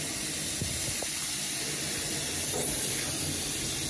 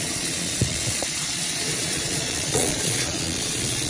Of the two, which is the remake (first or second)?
second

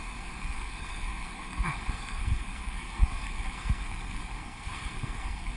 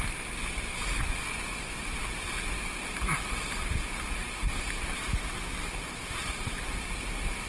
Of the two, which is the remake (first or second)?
first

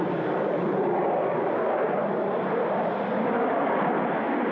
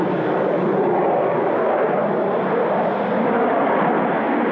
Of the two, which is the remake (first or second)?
first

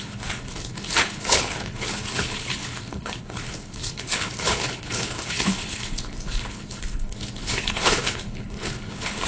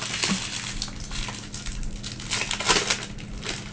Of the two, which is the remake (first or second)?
first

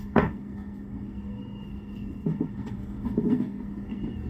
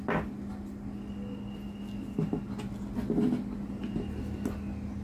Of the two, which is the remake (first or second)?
first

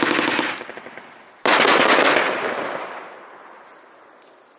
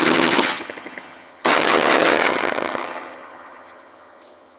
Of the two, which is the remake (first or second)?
second